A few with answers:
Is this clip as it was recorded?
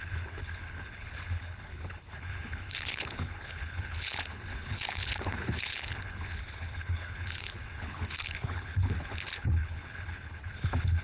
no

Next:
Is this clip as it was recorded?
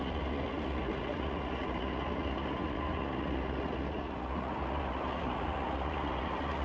no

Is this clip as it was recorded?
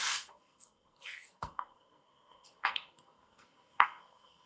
no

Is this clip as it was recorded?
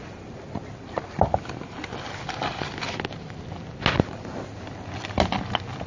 yes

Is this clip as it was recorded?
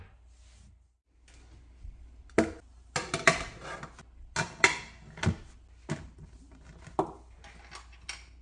yes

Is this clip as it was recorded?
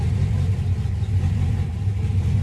yes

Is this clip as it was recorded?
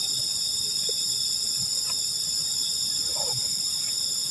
yes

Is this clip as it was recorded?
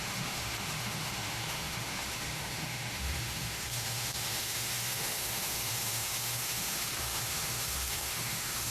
no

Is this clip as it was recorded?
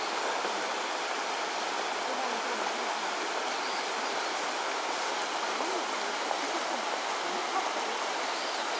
yes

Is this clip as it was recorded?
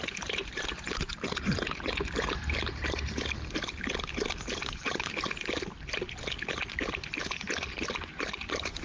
yes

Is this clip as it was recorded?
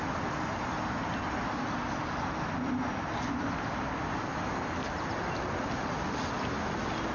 yes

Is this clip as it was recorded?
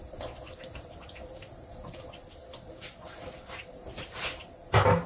yes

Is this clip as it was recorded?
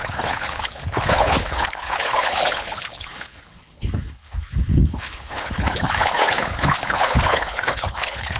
no